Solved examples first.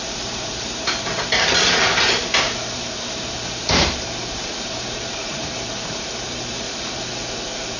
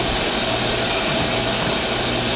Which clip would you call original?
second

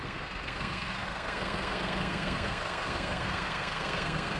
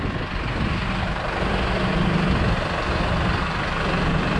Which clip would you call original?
second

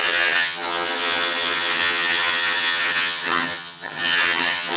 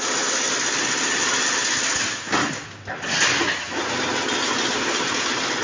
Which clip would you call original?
second